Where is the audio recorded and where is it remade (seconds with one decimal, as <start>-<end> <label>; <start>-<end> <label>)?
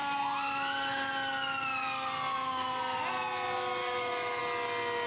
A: 0.0-3.8 recorded; 3.8-4.4 remade; 4.4-5.1 recorded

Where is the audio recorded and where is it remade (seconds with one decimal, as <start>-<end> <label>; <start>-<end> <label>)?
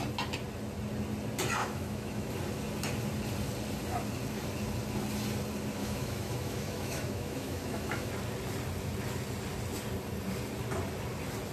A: 0.0-1.6 recorded; 1.6-2.3 remade; 2.3-5.8 recorded; 5.8-8.1 remade; 8.1-11.5 recorded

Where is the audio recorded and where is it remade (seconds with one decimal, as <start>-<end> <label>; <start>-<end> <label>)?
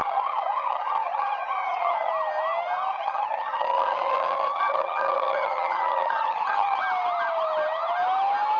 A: 0.0-2.1 remade; 2.1-2.9 recorded; 2.9-6.8 remade; 6.8-8.6 recorded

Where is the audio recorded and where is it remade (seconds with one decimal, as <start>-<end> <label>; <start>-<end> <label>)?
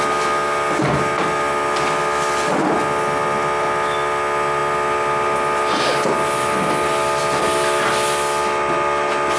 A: 0.0-9.4 recorded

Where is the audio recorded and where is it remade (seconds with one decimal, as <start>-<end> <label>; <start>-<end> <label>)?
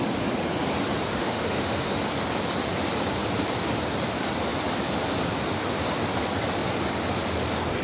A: 0.0-1.1 recorded; 1.1-2.1 remade; 2.1-7.8 recorded